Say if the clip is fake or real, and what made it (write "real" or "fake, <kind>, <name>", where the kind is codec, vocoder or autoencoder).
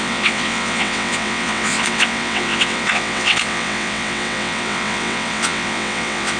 fake, vocoder, WaveNeXt